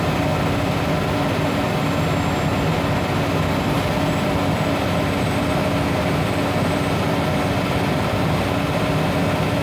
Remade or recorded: recorded